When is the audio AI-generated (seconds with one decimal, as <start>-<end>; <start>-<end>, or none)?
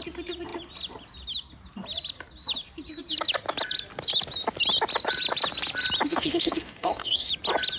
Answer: 6.1-7.3